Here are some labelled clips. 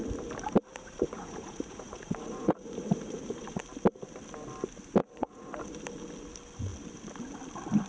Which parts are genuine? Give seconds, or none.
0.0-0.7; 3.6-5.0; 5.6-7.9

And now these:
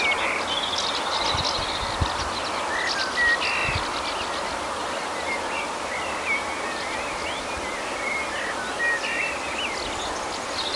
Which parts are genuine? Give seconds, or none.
0.0-10.8

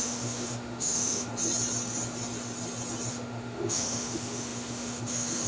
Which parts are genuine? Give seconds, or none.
1.3-3.1

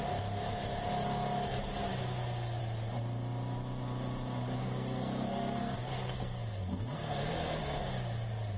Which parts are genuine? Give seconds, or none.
0.0-4.6; 7.6-8.6

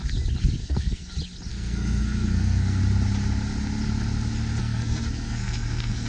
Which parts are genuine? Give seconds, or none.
0.0-0.6; 1.1-1.5; 2.8-4.6

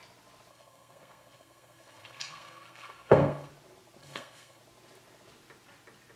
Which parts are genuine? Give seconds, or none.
0.0-0.5; 3.5-4.0; 4.6-6.2